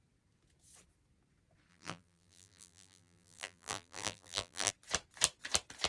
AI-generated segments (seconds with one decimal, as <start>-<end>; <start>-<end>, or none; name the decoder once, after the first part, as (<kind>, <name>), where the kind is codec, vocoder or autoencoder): 1.7-4.7 (vocoder, BigVGAN v2)